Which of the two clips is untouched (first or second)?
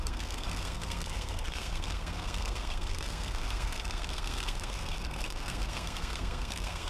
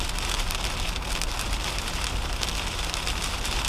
second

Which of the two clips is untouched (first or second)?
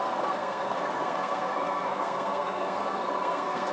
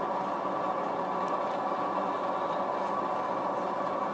second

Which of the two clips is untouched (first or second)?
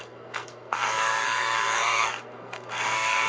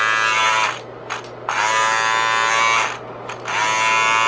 second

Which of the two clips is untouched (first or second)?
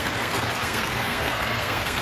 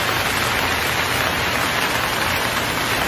second